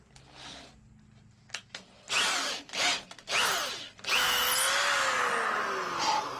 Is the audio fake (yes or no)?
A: no